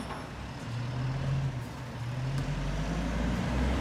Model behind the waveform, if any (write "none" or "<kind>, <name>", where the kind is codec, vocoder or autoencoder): none